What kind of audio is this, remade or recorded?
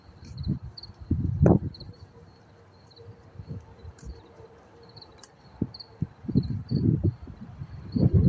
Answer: remade